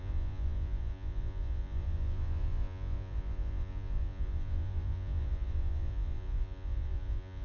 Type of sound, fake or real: fake